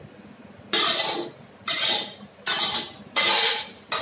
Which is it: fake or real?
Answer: real